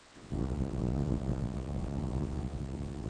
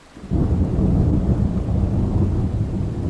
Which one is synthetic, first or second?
first